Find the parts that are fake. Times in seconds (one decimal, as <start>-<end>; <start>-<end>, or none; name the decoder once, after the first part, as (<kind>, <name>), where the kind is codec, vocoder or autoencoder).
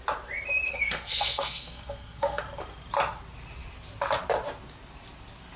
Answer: 0.7-2.4 (codec, SNAC)